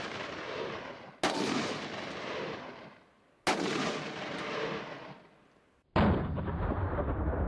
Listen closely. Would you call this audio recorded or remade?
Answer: recorded